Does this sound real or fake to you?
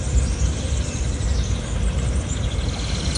real